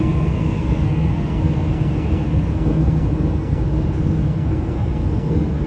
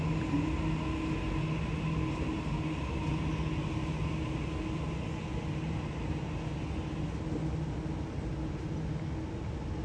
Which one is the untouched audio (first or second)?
second